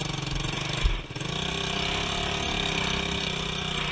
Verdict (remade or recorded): recorded